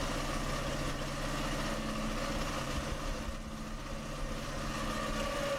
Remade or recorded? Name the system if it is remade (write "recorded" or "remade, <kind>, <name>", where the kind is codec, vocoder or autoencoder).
recorded